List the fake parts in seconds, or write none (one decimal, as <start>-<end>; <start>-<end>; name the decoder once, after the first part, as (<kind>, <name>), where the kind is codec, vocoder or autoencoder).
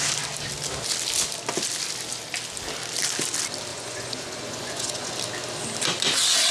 3.7-5.1 (vocoder, Vocos)